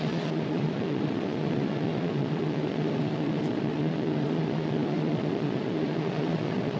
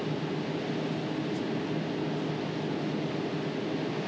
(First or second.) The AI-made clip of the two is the first